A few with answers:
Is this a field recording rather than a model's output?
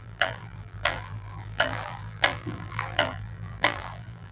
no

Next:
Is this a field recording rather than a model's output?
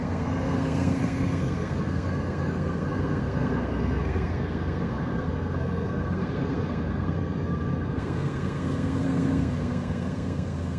no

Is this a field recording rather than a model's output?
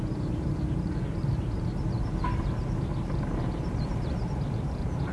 no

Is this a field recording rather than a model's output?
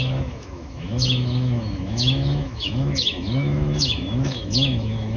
no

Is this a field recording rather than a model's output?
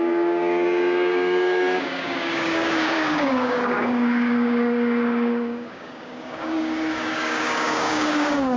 no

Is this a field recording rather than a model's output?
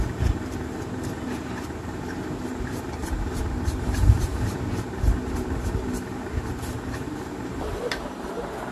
no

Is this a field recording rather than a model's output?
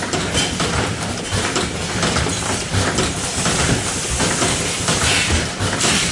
yes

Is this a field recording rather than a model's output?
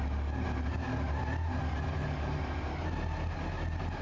yes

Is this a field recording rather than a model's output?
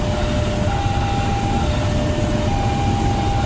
yes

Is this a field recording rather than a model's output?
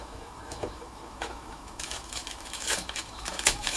no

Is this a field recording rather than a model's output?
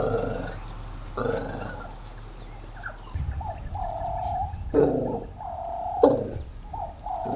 yes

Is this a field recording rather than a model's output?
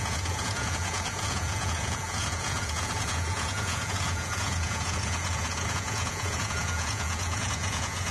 no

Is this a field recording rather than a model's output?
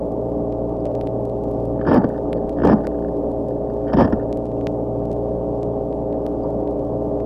yes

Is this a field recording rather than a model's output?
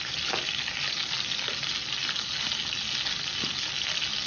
yes